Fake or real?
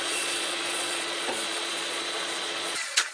fake